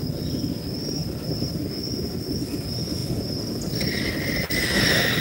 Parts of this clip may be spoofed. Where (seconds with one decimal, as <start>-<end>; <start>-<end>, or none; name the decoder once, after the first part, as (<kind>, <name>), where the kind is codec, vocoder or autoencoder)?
0.8-1.6 (vocoder, BigVGAN v2)